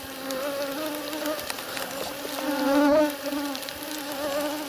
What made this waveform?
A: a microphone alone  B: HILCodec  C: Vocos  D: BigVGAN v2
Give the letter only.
A